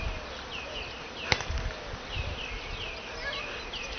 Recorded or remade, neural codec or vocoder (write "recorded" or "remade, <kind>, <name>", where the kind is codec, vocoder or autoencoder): recorded